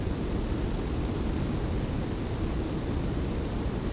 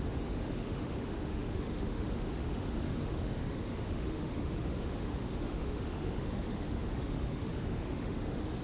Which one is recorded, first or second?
first